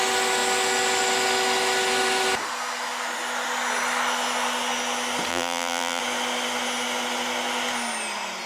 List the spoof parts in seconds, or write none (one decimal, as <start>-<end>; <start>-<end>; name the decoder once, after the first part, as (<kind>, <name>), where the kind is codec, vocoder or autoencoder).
5.3-6.0 (vocoder, BigVGAN v2)